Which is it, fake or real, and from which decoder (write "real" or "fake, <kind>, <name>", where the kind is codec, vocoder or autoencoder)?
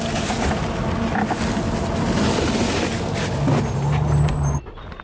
real